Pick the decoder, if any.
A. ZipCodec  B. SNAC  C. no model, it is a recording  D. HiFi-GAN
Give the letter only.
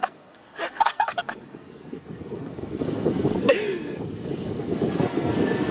B